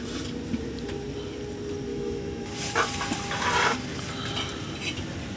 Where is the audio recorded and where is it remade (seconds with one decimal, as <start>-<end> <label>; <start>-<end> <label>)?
0.0-1.9 recorded; 1.9-2.5 remade; 2.5-5.4 recorded